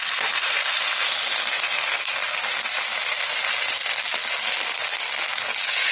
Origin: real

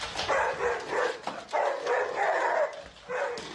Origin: real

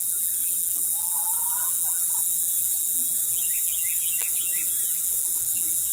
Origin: fake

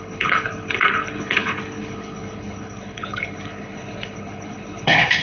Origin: fake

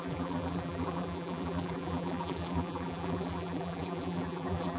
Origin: fake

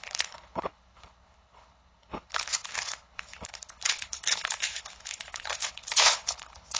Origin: fake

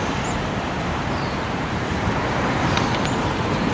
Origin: fake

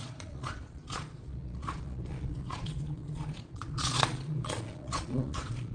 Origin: fake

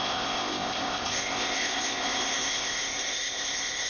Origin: fake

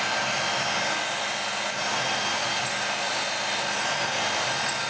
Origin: real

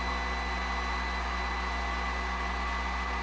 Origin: real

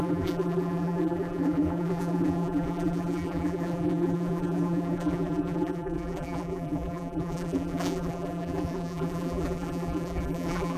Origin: fake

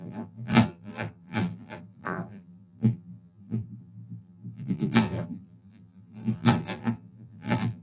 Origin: fake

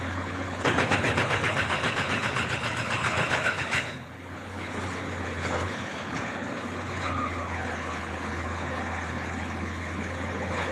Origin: fake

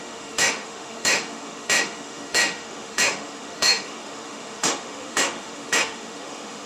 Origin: fake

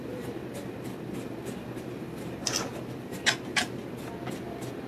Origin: real